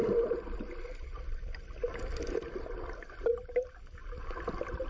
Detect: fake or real fake